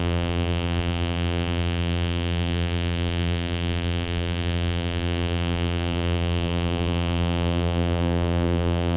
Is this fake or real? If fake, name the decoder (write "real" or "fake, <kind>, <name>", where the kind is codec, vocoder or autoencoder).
fake, vocoder, BigVGAN v2